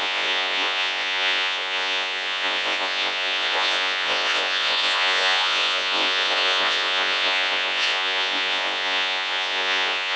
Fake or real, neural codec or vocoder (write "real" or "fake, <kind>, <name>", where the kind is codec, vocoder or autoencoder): fake, vocoder, Vocos